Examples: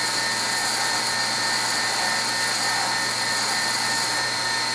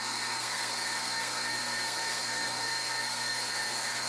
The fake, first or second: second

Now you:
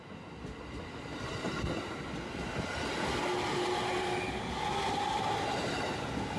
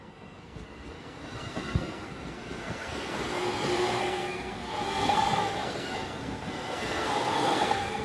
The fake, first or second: second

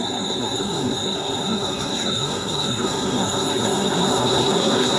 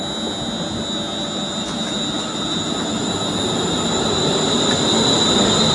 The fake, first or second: first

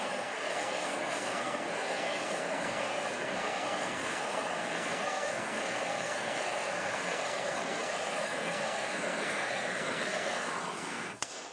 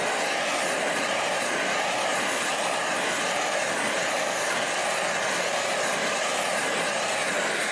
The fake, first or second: first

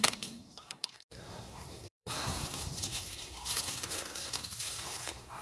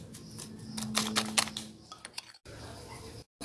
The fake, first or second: first